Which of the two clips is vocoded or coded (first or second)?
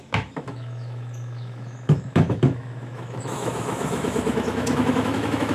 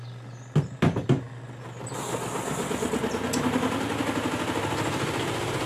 first